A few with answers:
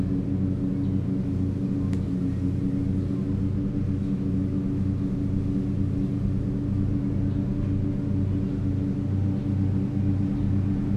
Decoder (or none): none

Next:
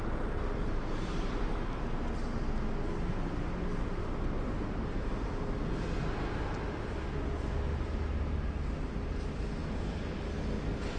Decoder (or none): none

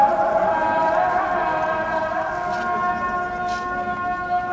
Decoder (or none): none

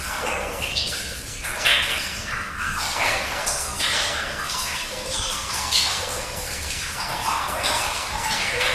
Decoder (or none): codec, SNAC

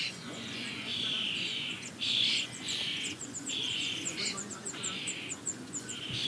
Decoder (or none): vocoder, Vocos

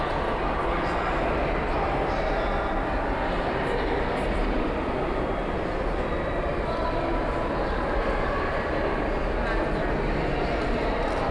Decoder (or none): none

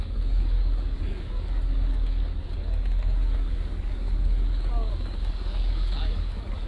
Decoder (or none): codec, DAC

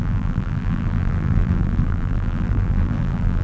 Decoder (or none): vocoder, BigVGAN v2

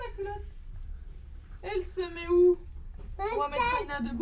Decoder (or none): none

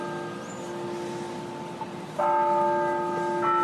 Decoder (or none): none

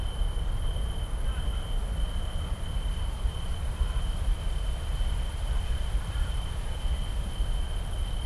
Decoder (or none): vocoder, BigVGAN v2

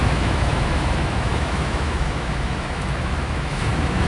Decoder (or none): autoencoder, DAC-VAE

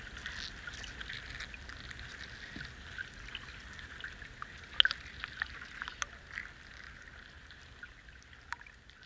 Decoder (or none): none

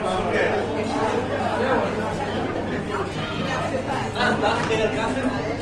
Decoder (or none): none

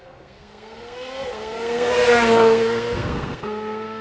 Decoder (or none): codec, SNAC